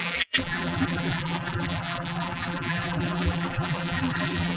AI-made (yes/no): yes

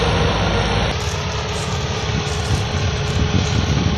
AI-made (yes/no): no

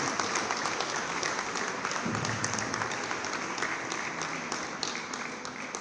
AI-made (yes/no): no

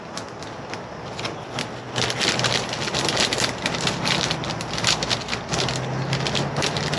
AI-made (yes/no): no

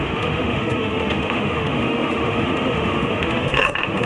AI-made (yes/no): yes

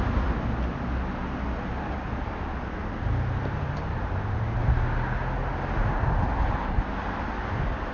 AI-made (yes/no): no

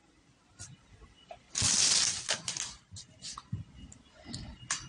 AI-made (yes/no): no